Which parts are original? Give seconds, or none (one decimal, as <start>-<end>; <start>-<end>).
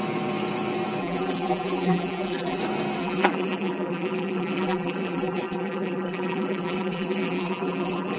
0.0-1.0; 2.6-3.0